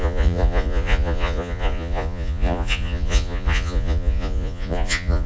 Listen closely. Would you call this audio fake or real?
fake